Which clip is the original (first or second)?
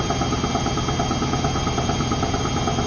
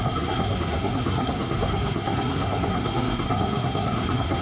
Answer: first